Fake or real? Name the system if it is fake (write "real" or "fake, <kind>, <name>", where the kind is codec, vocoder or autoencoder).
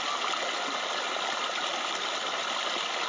real